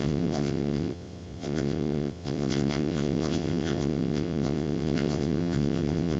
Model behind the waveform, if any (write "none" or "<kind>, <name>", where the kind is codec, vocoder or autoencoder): vocoder, WaveNeXt